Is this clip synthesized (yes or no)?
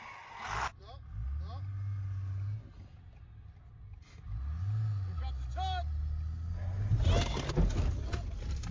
no